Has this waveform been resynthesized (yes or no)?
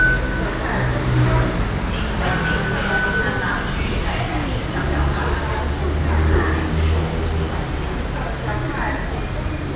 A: no